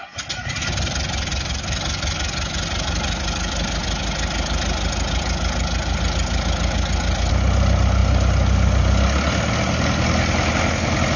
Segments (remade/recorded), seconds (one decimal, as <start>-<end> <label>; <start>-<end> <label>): 0.0-11.2 recorded